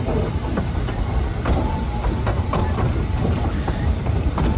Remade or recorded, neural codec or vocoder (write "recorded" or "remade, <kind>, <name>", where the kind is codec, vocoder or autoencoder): remade, vocoder, BigVGAN v2